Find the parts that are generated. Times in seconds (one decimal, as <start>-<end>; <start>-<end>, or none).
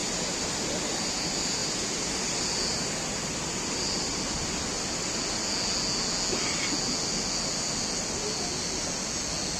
none